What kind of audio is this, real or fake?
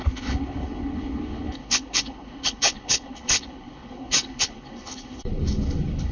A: fake